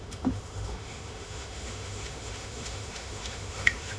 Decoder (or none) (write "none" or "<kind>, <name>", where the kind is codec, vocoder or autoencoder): autoencoder, DAC-VAE